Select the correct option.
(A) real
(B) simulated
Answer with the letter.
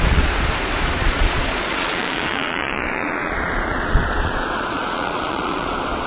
B